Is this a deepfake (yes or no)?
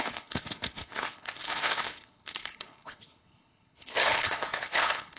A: yes